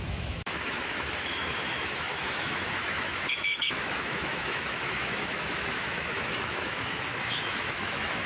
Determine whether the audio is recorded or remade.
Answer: remade